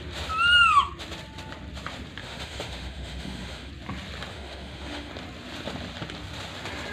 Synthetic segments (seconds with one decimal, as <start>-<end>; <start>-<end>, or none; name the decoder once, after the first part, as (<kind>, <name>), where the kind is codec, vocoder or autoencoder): 2.2-3.7 (autoencoder, DAC-VAE); 4.3-5.1